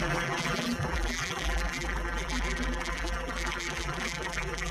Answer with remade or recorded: remade